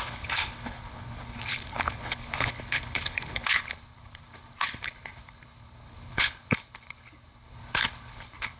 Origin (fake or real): fake